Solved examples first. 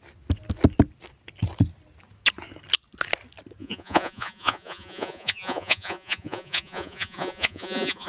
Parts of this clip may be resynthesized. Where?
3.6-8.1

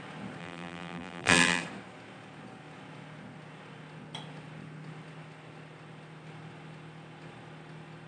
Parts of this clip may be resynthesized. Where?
0.4-1.6

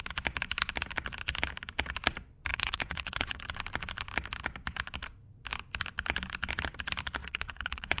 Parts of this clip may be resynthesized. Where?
2.5-3.4; 7.2-8.0

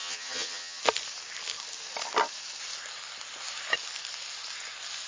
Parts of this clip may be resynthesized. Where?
0.0-0.8

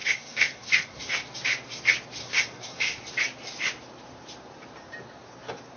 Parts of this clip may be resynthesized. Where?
0.0-1.2; 2.2-3.0

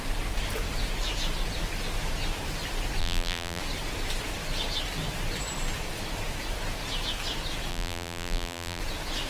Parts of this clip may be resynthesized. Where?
3.0-3.6; 7.7-8.8